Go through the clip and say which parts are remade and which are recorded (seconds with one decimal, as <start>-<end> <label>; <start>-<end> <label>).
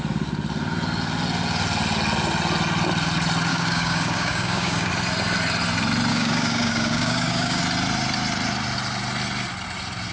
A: 0.0-3.5 recorded; 3.5-4.9 remade; 4.9-6.1 recorded; 6.1-7.6 remade; 7.6-10.1 recorded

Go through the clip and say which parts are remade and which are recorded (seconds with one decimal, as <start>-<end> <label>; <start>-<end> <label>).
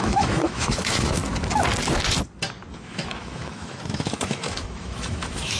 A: 0.0-1.2 remade; 1.2-2.7 recorded; 2.7-5.6 remade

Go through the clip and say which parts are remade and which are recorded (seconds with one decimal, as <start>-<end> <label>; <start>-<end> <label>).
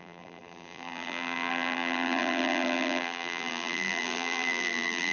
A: 0.0-5.1 remade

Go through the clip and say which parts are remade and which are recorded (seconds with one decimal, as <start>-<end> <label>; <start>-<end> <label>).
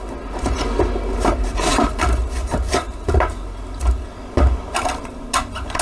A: 0.0-5.8 recorded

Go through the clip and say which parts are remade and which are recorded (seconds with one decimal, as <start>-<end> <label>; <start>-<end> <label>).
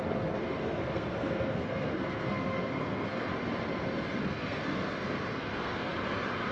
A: 0.0-3.3 remade; 3.3-4.2 recorded; 4.2-5.9 remade; 5.9-6.5 recorded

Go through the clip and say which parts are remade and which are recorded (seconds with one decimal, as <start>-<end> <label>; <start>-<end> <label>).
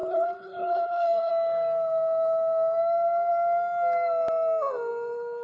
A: 0.0-1.3 remade; 1.3-5.4 recorded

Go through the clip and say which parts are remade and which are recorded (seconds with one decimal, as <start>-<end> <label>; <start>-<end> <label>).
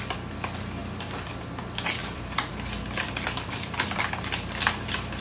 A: 0.0-0.8 recorded; 0.8-1.4 remade; 1.4-2.0 recorded; 2.0-4.0 remade; 4.0-5.2 recorded